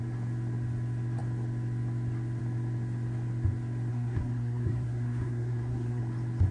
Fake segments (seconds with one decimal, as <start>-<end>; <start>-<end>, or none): 3.9-6.0